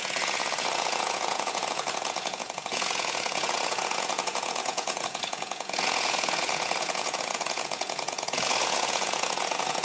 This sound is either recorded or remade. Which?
remade